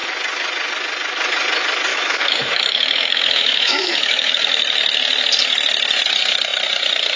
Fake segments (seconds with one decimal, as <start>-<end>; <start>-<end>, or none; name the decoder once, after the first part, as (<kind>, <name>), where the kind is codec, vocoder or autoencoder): 1.9-4.5 (autoencoder, DAC-VAE)